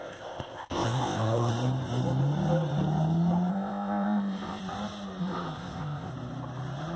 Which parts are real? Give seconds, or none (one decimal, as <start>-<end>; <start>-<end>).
1.5-3.5; 4.6-5.2; 6.1-7.0